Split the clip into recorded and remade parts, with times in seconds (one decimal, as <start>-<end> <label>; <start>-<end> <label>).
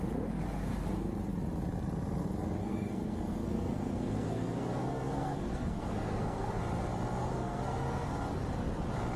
0.0-2.6 recorded; 2.6-6.6 remade; 6.6-7.2 recorded; 7.2-8.1 remade; 8.1-9.2 recorded